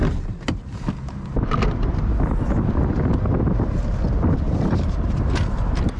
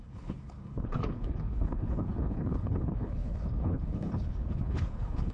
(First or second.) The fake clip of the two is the second